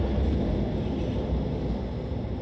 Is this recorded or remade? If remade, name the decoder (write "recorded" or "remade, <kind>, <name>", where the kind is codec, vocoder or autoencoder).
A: recorded